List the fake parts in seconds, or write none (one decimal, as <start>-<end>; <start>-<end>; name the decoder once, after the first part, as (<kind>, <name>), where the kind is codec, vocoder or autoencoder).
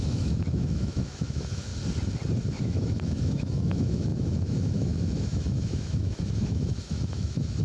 0.0-1.7 (autoencoder, DAC-VAE); 2.6-7.6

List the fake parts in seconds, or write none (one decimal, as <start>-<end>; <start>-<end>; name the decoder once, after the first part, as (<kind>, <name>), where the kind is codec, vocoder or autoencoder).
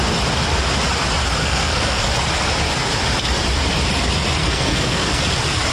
1.4-2.1 (codec, SNAC); 4.4-5.2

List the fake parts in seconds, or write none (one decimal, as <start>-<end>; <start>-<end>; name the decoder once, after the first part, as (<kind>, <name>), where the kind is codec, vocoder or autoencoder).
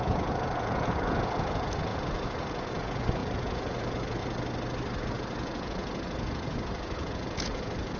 0.0-4.2 (vocoder, Vocos); 5.0-8.0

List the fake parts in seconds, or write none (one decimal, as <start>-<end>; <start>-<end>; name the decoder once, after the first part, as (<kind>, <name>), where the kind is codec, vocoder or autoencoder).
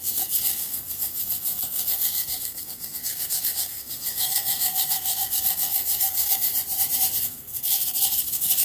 0.0-6.5 (codec, SNAC); 7.2-8.6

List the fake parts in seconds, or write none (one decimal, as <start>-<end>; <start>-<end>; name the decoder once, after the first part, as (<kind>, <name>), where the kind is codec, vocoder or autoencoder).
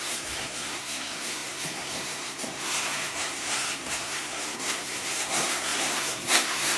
0.0-6.8 (codec, SNAC)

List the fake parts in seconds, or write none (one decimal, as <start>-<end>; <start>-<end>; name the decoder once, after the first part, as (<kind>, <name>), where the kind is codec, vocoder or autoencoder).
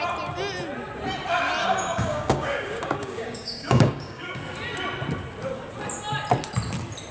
1.6-4.4 (codec, DAC)